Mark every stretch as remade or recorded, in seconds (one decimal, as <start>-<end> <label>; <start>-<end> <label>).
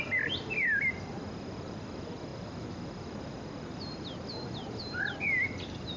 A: 0.0-6.0 recorded